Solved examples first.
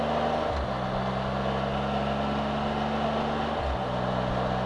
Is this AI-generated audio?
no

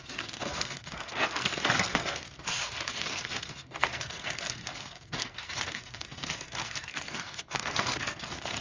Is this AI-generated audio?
yes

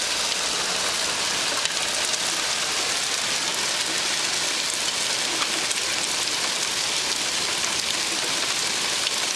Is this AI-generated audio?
no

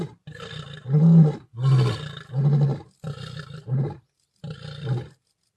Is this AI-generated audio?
no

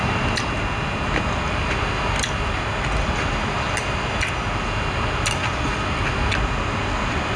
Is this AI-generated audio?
no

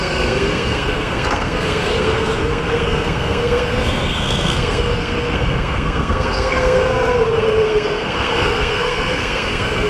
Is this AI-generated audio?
yes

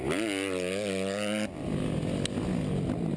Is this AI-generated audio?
no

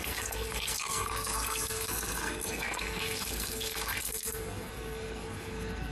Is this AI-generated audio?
yes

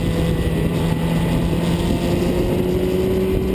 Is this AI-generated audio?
no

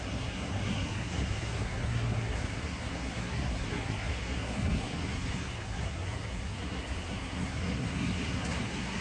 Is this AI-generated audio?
yes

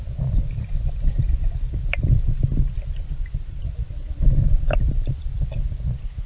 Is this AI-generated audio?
no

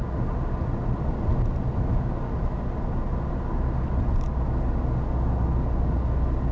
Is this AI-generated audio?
no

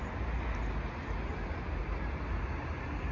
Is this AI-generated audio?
no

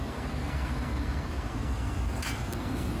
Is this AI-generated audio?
yes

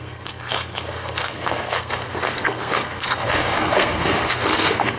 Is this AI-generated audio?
yes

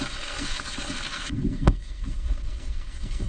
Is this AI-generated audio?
yes